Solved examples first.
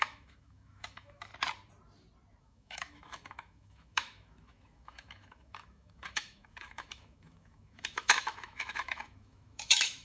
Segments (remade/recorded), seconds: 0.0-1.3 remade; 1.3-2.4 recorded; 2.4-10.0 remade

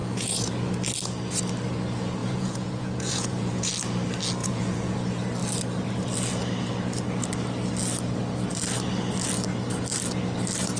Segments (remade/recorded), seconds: 0.0-0.5 remade; 0.5-2.2 recorded; 2.2-3.7 remade; 3.7-4.4 recorded; 4.4-5.0 remade; 5.0-10.8 recorded

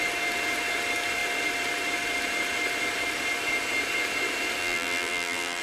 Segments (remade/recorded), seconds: 0.0-4.6 recorded; 4.6-5.6 remade

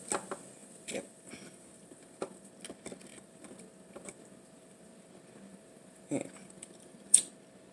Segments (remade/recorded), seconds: 0.0-0.6 recorded; 0.6-2.5 remade; 2.5-3.1 recorded; 3.1-5.1 remade; 5.1-5.5 recorded; 5.5-7.3 remade; 7.3-7.7 recorded

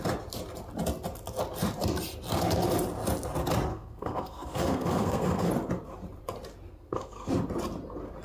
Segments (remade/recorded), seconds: 0.0-3.7 recorded; 3.7-5.5 remade; 5.5-6.7 recorded; 6.7-7.3 remade; 7.3-8.2 recorded

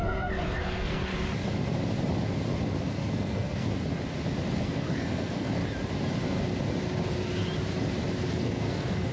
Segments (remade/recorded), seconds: 0.0-1.1 remade; 1.1-2.8 recorded; 2.8-3.7 remade; 3.7-4.6 recorded; 4.6-5.6 remade; 5.6-8.3 recorded; 8.3-9.1 remade

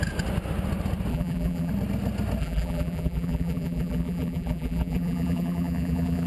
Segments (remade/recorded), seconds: 0.0-1.1 recorded; 1.1-1.7 remade; 1.7-2.4 recorded; 2.4-6.3 remade